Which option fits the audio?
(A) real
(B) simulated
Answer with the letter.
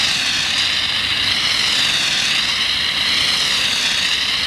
A